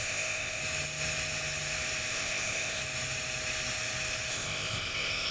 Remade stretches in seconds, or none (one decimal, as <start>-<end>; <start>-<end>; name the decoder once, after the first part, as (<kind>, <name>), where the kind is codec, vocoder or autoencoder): 0.0-0.6 (codec, ZipCodec); 2.1-2.8; 4.3-5.3